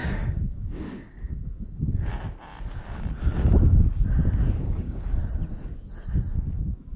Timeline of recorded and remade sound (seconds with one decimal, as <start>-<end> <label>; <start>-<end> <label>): 0.0-2.1 remade; 2.1-4.6 recorded; 4.6-5.2 remade; 5.2-7.0 recorded